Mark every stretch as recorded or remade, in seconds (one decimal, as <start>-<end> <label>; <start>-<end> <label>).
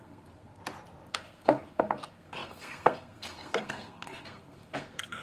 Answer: 0.0-0.6 remade; 0.6-1.1 recorded; 1.1-5.2 remade